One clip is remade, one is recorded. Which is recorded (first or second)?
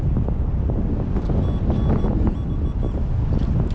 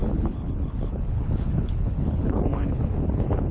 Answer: first